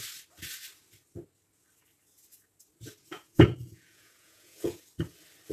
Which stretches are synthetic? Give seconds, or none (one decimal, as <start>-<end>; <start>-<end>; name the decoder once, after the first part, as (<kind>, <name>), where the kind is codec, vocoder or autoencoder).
3.0-4.8 (vocoder, Vocos)